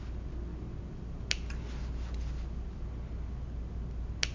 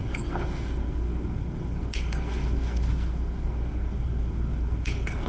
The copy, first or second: second